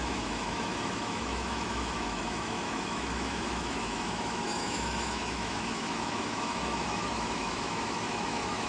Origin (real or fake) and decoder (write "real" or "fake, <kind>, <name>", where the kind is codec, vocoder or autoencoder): fake, autoencoder, DAC-VAE